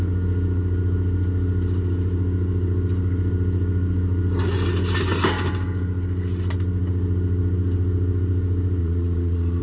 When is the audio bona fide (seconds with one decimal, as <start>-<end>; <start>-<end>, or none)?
0.0-8.8